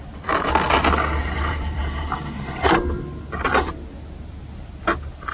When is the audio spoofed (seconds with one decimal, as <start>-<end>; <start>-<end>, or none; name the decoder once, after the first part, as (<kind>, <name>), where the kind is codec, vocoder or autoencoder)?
1.2-2.8 (vocoder, BigVGAN v2)